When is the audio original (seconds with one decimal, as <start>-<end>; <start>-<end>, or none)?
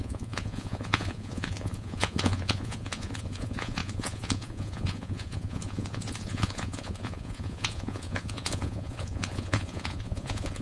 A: none